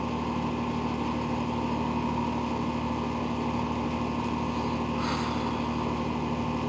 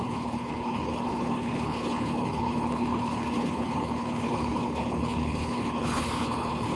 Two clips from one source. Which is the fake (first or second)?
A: second